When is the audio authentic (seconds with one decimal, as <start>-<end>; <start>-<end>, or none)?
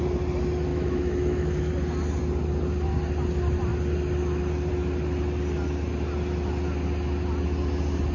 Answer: 0.0-0.7; 1.7-8.1